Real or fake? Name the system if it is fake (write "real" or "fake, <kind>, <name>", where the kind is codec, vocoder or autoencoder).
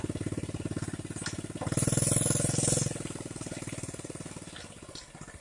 real